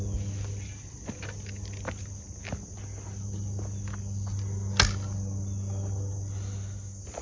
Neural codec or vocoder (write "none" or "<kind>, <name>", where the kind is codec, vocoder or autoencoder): none